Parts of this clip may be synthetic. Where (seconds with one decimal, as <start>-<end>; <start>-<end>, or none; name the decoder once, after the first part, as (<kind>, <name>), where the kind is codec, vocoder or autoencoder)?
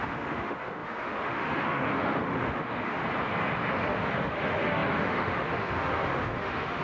0.0-3.0 (autoencoder, DAC-VAE); 3.7-6.8